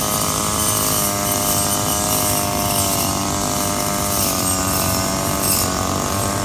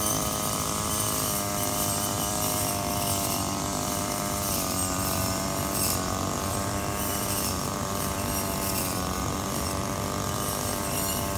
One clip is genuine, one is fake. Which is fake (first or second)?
second